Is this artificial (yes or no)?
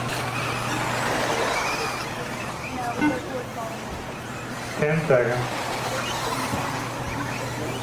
no